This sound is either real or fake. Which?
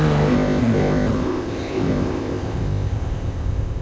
fake